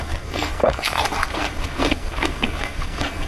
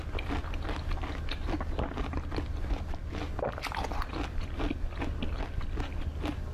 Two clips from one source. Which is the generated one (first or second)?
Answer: first